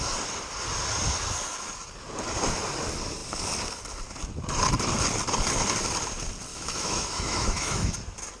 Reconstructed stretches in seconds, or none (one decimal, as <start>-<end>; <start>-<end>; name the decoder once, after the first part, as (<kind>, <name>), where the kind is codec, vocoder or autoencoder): 6.5-7.9 (autoencoder, DAC-VAE)